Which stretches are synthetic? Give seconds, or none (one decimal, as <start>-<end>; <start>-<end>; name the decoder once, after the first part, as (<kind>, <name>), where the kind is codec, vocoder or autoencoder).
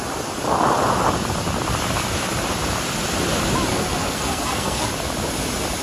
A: 3.7-4.9 (codec, SNAC)